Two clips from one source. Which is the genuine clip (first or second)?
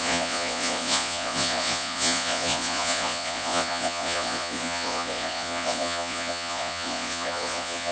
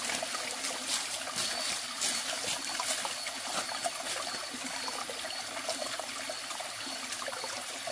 second